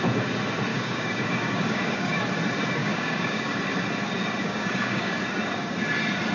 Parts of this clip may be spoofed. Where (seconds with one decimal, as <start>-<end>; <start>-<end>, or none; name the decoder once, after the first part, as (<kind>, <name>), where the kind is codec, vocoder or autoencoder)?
0.7-2.2 (codec, DAC); 2.8-3.6; 4.4-5.2